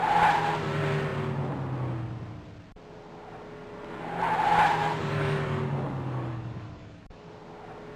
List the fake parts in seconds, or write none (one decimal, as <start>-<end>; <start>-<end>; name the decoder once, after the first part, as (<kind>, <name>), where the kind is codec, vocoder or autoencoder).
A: 4.8-7.4 (codec, DAC)